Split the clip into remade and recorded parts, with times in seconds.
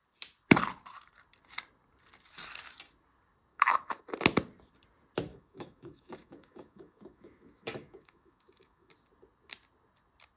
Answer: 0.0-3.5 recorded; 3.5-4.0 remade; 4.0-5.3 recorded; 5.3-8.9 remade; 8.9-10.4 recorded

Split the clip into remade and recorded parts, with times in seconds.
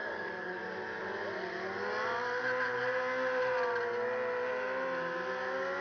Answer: 0.0-0.6 remade; 0.6-5.8 recorded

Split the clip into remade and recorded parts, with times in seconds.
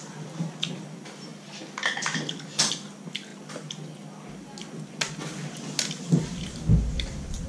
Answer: 0.0-7.5 recorded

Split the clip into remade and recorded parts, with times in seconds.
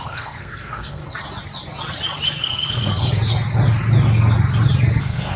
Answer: 0.0-1.0 remade; 1.0-2.4 recorded; 2.4-2.9 remade; 2.9-5.0 recorded; 5.0-5.4 remade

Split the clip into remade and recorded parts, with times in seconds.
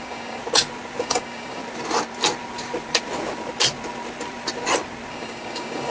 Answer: 0.0-0.4 remade; 0.4-1.0 recorded; 1.0-1.6 remade; 1.6-5.1 recorded; 5.1-5.9 remade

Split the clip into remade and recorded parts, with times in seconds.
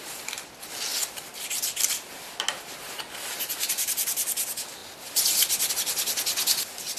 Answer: 0.0-7.0 recorded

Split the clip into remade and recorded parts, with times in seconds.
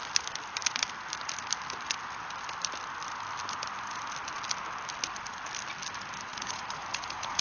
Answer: 0.0-6.3 recorded; 6.3-7.4 remade